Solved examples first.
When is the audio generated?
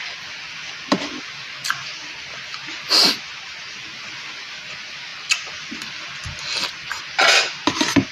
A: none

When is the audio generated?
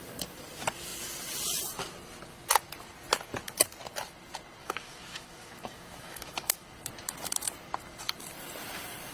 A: 4.6-6.7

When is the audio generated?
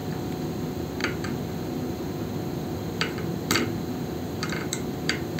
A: none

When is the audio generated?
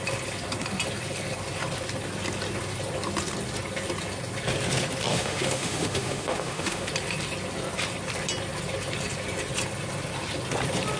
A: 5.1-6.9